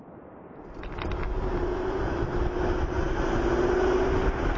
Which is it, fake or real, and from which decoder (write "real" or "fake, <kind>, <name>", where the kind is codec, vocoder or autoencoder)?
real